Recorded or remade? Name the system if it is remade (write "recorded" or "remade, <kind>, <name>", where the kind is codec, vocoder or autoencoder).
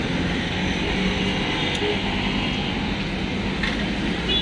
recorded